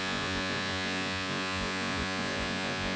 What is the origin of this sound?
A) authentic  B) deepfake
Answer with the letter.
B